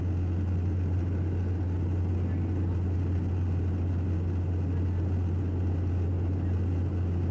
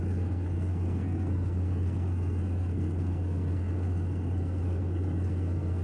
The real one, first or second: first